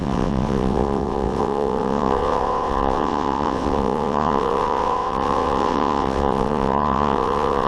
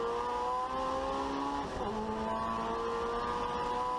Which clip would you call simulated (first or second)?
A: first